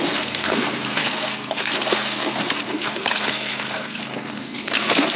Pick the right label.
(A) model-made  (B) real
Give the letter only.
A